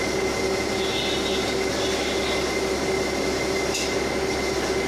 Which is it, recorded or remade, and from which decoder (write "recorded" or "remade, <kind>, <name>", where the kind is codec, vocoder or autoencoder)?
recorded